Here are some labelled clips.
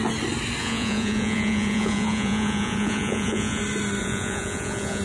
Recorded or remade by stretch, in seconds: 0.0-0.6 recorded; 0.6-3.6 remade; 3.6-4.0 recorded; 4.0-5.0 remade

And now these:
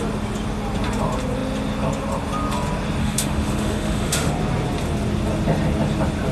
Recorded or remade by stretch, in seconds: 0.0-3.0 recorded; 3.0-4.3 remade; 4.3-6.3 recorded

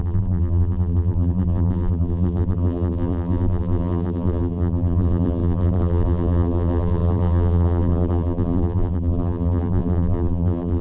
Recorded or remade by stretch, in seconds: 0.0-10.8 remade

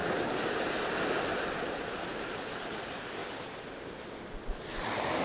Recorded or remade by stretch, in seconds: 0.0-5.2 recorded

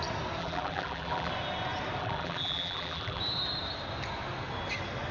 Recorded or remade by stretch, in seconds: 0.0-0.4 recorded; 0.4-1.3 remade; 1.3-2.0 recorded; 2.0-3.2 remade; 3.2-5.1 recorded

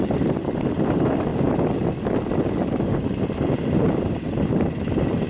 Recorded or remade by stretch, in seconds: 0.0-5.3 recorded